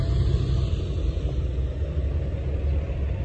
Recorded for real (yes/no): yes